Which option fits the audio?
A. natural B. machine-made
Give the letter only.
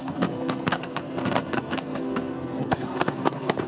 B